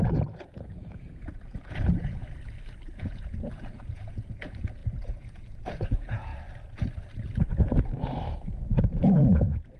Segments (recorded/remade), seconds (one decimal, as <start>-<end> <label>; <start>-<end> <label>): 0.0-2.2 remade; 2.2-3.0 recorded; 3.0-6.3 remade; 6.3-8.5 recorded; 8.5-9.8 remade